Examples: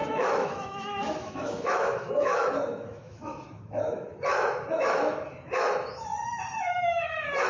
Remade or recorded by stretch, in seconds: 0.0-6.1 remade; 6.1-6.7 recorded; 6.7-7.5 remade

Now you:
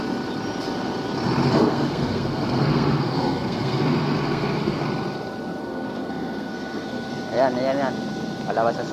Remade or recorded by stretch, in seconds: 0.0-1.5 recorded; 1.5-4.8 remade; 4.8-5.6 recorded; 5.6-7.1 remade; 7.1-8.9 recorded

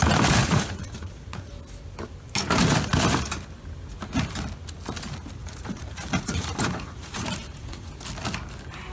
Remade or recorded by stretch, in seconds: 0.0-0.4 recorded; 0.4-1.5 remade; 1.5-5.4 recorded; 5.4-7.9 remade; 7.9-8.9 recorded

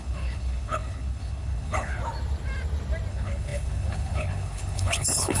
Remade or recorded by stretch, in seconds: 0.0-2.0 remade; 2.0-3.1 recorded; 3.1-5.4 remade

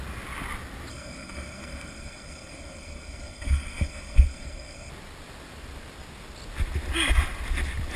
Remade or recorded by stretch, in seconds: 0.0-0.9 recorded; 0.9-4.9 remade; 4.9-8.0 recorded

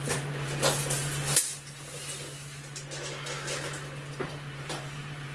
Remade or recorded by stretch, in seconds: 0.0-1.0 remade; 1.0-4.2 recorded; 4.2-5.3 remade